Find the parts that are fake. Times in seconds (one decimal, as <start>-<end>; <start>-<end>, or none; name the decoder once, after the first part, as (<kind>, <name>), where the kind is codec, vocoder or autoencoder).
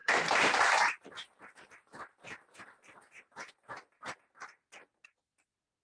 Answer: 0.0-3.5 (vocoder, BigVGAN v2)